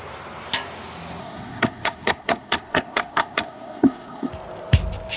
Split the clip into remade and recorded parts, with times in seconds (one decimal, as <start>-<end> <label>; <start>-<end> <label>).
0.0-1.2 recorded; 1.2-4.3 remade; 4.3-5.2 recorded